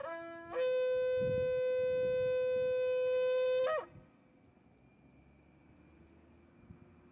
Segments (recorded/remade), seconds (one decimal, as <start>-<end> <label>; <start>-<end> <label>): 0.0-7.1 recorded